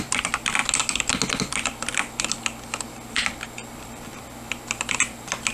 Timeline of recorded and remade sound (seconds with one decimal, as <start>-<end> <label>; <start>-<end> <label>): 0.0-3.6 recorded; 3.6-5.5 remade

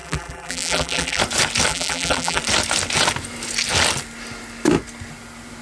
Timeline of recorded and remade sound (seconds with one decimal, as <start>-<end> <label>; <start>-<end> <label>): 0.0-1.2 remade; 1.2-1.7 recorded; 1.7-2.4 remade; 2.4-5.6 recorded

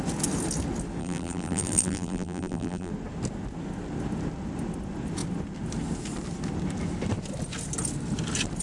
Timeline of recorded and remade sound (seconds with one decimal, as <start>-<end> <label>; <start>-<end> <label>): 0.0-1.0 recorded; 1.0-2.9 remade; 2.9-8.6 recorded

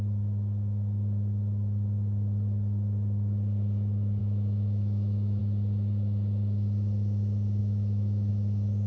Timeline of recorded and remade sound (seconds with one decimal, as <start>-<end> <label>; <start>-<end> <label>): 0.0-4.2 recorded; 4.2-5.4 remade; 5.4-7.6 recorded; 7.6-8.3 remade; 8.3-8.9 recorded

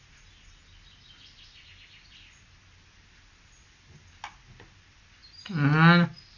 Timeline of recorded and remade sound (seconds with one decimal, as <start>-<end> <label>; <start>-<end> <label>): 0.0-6.4 recorded

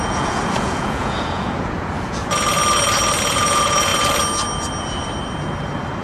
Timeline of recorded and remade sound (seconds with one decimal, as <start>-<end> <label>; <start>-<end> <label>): 0.0-2.2 remade; 2.2-3.2 recorded; 3.2-3.9 remade; 3.9-6.0 recorded